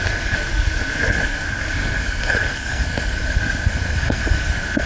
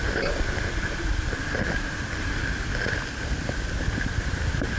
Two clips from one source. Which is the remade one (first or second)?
first